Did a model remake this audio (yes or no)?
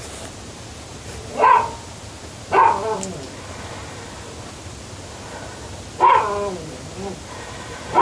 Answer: no